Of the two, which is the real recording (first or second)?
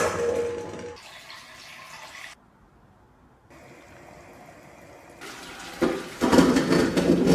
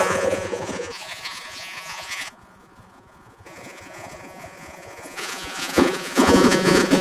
first